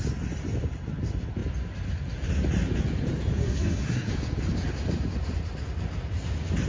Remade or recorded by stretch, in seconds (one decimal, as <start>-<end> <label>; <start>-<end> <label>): 0.0-3.4 recorded; 3.4-4.1 remade; 4.1-6.7 recorded